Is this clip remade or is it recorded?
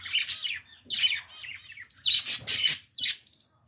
recorded